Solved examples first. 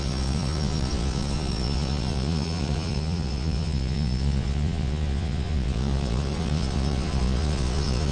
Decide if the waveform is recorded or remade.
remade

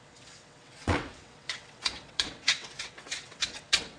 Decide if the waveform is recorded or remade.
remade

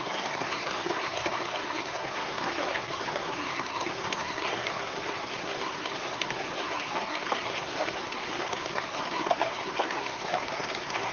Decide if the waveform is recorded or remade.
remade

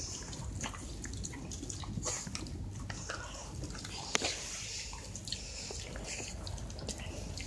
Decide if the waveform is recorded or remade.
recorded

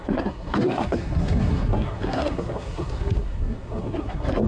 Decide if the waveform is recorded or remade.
remade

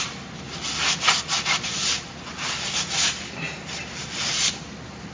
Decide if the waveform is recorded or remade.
recorded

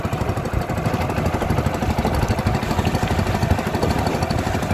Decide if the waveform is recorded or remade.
recorded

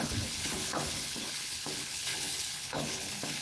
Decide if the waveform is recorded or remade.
remade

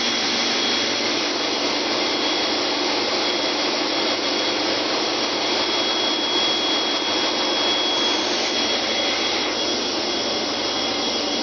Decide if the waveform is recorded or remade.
recorded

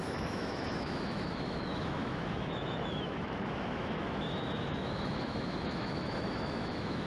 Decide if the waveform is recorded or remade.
remade